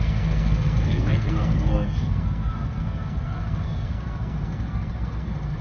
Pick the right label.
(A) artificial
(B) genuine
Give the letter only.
A